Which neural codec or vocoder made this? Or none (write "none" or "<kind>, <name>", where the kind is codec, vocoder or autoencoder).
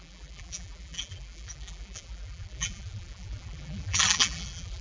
vocoder, BigVGAN v2